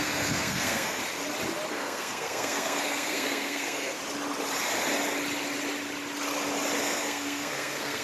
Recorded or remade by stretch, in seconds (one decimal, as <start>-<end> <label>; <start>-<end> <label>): 0.0-1.0 remade; 1.0-1.7 recorded; 1.7-4.0 remade; 4.0-6.8 recorded; 6.8-8.0 remade